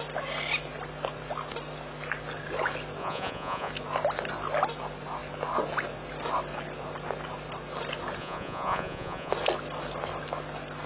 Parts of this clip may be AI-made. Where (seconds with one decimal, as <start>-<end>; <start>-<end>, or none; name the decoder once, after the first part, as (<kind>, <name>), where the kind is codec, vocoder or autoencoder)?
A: 3.0-3.7 (vocoder, Vocos); 8.2-9.3